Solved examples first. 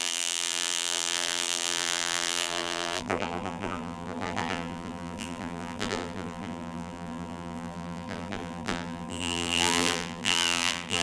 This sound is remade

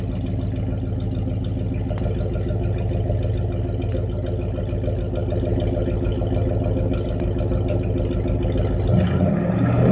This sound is recorded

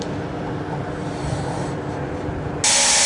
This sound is recorded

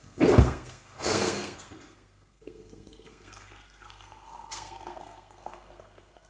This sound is remade